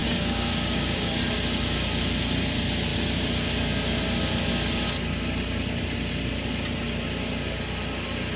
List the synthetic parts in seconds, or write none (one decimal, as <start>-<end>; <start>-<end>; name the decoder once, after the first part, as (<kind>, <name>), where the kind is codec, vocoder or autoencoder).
0.0-1.2 (codec, DAC)

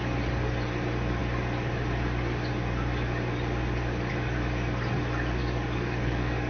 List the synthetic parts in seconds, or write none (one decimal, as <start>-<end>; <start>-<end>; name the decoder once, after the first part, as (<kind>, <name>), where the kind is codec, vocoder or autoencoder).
5.4-6.5 (codec, DAC)

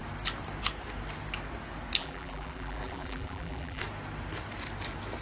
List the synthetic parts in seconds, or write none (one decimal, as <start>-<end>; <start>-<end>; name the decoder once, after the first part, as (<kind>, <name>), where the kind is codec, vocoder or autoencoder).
2.0-3.8 (vocoder, BigVGAN v2)